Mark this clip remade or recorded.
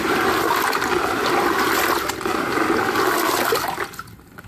recorded